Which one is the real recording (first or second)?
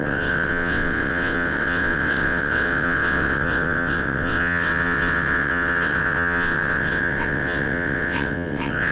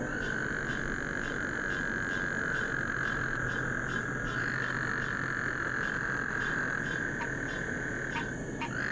second